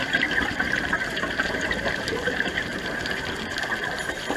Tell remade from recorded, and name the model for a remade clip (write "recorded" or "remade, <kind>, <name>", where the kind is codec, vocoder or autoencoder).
remade, vocoder, BigVGAN v2